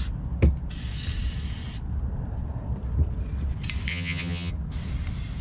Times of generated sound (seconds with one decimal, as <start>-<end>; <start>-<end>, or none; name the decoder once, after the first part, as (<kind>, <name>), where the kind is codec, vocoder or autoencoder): 3.9-4.5 (vocoder, HiFi-GAN)